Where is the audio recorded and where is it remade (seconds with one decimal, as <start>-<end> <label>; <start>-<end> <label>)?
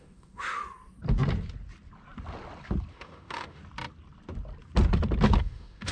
0.0-0.6 remade; 0.6-2.9 recorded; 2.9-3.6 remade; 3.6-5.4 recorded; 5.4-5.9 remade